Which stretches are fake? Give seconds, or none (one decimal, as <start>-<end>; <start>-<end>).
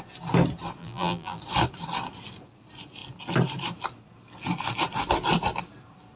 0.8-1.4